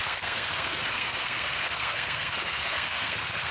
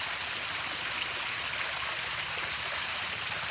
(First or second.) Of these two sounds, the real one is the second